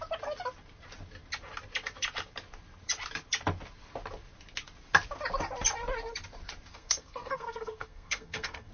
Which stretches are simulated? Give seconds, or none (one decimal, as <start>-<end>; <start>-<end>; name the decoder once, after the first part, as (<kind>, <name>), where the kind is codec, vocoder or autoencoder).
6.7-8.7 (codec, SNAC)